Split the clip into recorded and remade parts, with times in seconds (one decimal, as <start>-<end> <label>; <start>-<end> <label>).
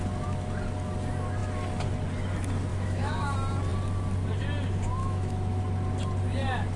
0.0-2.7 recorded; 2.7-3.2 remade; 3.2-5.0 recorded; 5.0-5.6 remade; 5.6-6.8 recorded